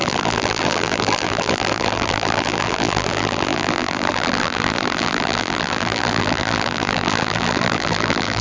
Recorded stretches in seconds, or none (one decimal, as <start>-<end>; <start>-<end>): none